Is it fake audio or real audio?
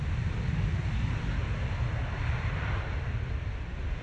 real